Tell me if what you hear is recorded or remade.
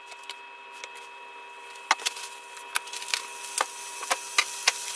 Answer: recorded